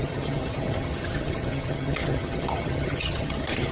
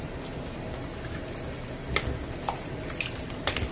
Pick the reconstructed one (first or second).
first